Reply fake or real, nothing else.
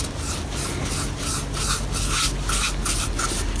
real